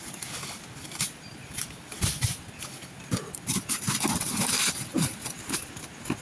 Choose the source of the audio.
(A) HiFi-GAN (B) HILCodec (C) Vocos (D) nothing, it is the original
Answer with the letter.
D